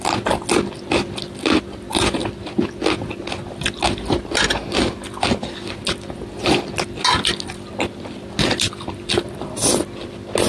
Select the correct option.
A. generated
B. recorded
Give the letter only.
B